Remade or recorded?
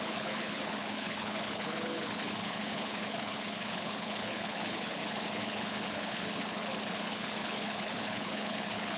remade